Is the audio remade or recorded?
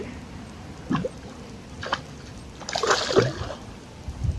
recorded